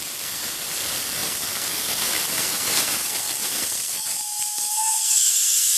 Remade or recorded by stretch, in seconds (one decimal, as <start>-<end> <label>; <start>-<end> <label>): 0.0-5.8 remade